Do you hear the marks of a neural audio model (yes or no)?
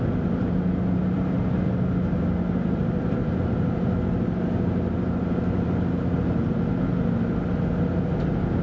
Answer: no